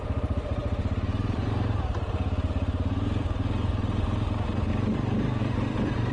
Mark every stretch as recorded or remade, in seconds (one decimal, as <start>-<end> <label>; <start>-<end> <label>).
0.0-4.7 remade; 4.7-5.4 recorded; 5.4-6.1 remade